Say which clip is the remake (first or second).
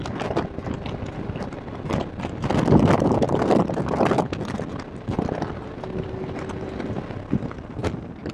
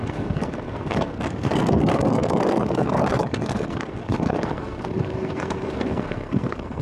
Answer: second